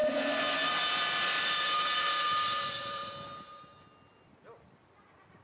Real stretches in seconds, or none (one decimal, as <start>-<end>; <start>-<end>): 3.1-5.4